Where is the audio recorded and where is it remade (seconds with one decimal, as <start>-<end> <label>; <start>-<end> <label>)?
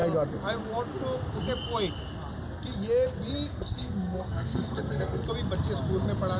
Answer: 0.0-3.5 recorded; 3.5-5.2 remade; 5.2-6.4 recorded